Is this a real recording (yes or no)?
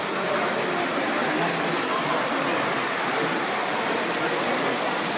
yes